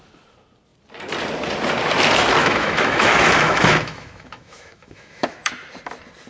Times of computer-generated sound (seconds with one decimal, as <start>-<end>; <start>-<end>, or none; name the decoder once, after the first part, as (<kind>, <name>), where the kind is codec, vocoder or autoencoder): 2.4-5.5 (autoencoder, DAC-VAE)